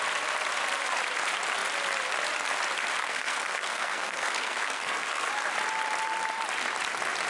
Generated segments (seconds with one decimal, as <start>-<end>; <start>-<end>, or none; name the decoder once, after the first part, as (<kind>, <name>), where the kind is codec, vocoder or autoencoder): 3.0-5.3 (codec, SNAC)